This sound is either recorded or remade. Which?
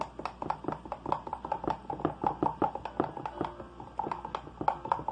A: recorded